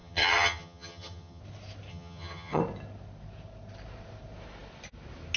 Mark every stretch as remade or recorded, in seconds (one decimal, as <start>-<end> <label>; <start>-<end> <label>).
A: 0.0-1.4 remade; 1.4-1.9 recorded; 1.9-2.6 remade; 2.6-5.4 recorded